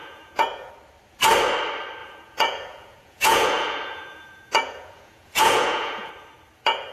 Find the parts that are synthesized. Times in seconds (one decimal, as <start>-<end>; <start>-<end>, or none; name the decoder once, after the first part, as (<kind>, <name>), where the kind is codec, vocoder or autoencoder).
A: 0.0-0.7 (vocoder, Vocos); 2.0-6.1